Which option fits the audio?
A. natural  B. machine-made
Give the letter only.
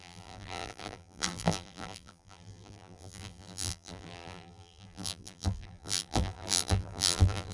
B